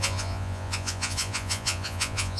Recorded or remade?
remade